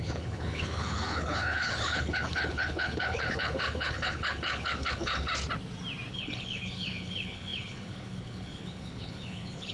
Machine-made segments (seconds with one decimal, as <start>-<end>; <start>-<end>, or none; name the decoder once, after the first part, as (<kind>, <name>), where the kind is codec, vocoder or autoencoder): 0.0-5.3 (codec, HILCodec); 6.1-9.7